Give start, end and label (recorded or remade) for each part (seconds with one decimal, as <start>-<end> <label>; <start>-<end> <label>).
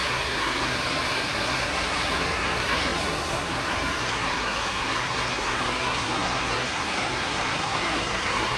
0.0-8.6 remade